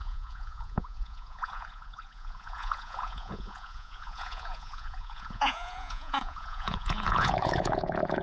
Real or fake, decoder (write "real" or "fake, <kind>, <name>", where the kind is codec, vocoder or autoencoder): fake, vocoder, Vocos